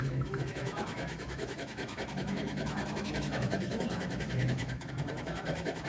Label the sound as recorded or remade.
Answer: remade